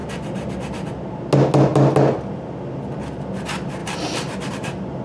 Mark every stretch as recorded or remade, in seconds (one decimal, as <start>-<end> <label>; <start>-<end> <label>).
0.0-0.5 remade; 0.5-5.0 recorded